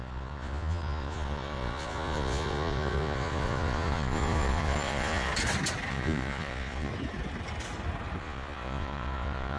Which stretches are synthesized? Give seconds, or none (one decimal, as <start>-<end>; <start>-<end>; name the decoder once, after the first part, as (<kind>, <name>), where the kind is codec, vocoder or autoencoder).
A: 0.0-5.3 (vocoder, Vocos); 5.9-6.9; 8.2-9.6